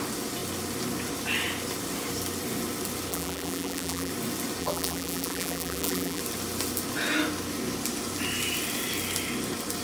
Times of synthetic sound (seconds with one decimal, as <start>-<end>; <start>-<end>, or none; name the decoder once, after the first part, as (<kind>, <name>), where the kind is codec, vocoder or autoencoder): 3.1-4.1 (vocoder, BigVGAN v2); 4.6-6.2